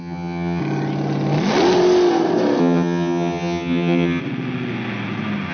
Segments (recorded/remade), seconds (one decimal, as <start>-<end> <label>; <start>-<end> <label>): 0.0-0.6 remade; 0.6-2.6 recorded; 2.6-4.2 remade; 4.2-5.5 recorded